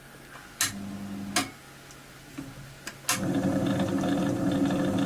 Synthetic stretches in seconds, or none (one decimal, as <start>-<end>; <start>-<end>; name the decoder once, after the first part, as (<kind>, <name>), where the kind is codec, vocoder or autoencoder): none